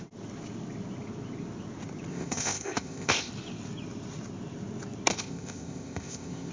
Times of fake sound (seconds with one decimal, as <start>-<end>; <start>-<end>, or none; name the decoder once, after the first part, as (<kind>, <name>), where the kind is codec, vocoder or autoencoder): 2.1-3.3 (codec, ZipCodec); 5.1-6.5